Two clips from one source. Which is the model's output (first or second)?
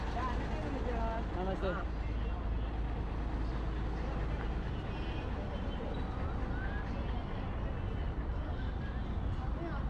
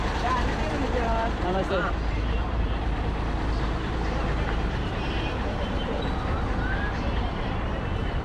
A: second